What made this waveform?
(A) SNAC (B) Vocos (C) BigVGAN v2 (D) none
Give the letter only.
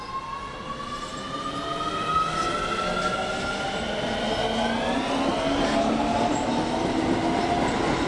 D